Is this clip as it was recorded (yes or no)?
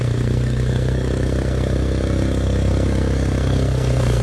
no